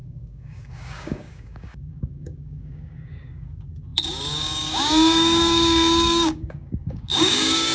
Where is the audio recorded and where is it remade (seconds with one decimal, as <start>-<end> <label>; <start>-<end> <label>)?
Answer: 0.0-7.7 remade